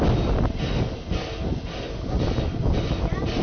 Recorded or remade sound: recorded